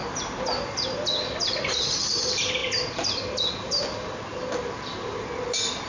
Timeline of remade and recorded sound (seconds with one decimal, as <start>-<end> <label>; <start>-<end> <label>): 0.0-1.5 recorded; 1.5-2.6 remade; 2.6-5.9 recorded